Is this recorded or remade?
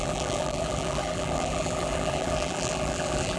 remade